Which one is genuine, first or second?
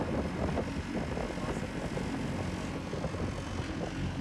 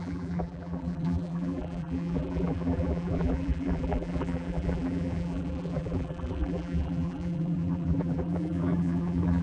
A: first